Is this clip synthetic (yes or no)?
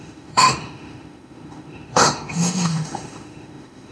yes